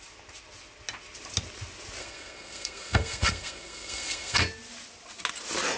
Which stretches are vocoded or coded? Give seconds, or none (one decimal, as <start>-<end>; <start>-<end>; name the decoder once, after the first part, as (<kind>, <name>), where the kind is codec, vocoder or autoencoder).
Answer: 2.0-4.4 (codec, SNAC)